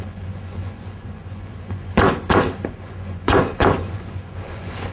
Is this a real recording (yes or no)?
no